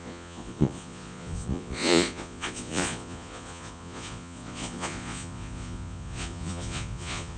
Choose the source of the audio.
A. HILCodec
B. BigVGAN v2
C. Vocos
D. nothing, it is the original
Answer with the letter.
C